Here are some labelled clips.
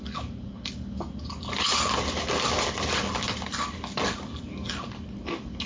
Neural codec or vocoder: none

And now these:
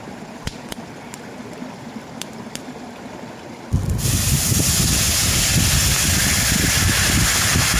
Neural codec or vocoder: none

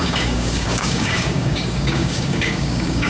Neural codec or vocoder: codec, DAC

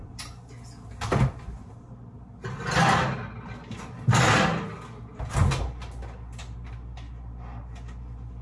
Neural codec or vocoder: none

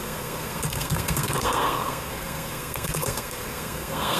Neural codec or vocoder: codec, SNAC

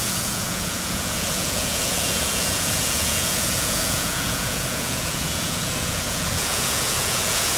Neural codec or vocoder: vocoder, Vocos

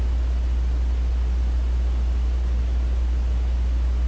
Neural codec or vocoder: none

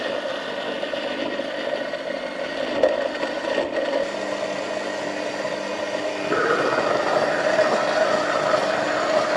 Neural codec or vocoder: none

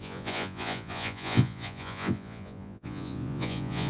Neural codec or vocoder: vocoder, Vocos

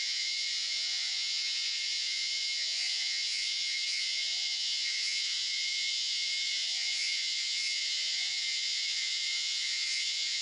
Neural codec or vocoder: vocoder, Vocos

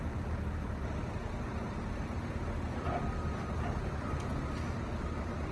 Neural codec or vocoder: vocoder, BigVGAN v2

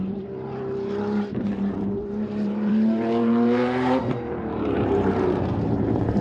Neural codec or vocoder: vocoder, BigVGAN v2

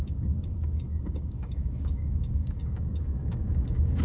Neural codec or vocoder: codec, DAC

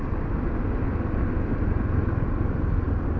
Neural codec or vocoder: none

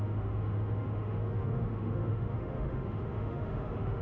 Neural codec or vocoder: autoencoder, DAC-VAE